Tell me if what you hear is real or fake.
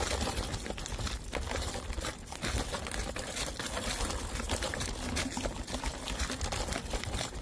real